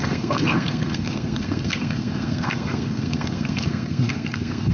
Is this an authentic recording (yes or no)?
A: no